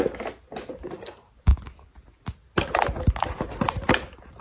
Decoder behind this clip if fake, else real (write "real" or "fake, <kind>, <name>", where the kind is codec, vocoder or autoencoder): real